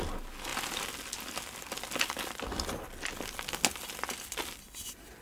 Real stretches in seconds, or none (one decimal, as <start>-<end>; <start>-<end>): 0.0-5.2